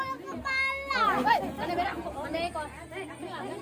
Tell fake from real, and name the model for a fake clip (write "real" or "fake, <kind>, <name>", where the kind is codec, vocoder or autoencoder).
real